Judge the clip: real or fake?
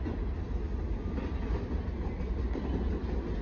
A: real